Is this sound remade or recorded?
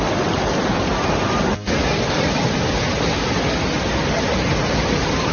recorded